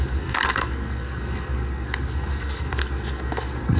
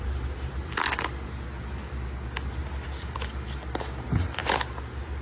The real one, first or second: second